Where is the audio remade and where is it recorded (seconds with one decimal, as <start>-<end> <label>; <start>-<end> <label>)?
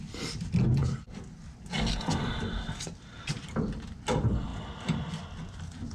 0.0-5.9 recorded